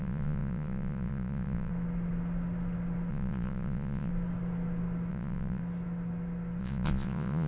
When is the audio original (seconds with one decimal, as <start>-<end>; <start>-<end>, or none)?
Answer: 1.7-3.1; 4.1-5.1; 5.6-6.6